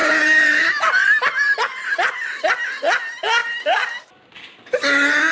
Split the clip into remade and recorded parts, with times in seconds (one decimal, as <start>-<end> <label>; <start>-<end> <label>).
0.0-2.4 remade; 2.4-5.3 recorded